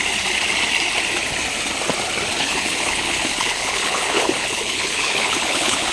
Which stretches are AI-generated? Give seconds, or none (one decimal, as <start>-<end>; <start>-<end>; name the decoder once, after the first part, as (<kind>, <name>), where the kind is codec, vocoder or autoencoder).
2.4-5.9 (codec, HILCodec)